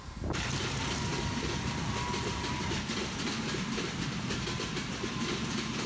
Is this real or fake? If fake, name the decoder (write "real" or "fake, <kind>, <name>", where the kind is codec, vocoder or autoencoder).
real